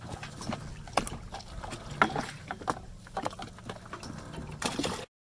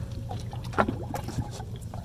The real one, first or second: first